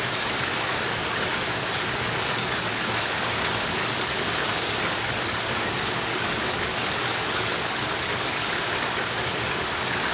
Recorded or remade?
remade